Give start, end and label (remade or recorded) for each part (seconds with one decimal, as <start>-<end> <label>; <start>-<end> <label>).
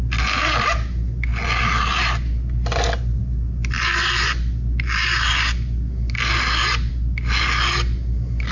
0.0-8.5 recorded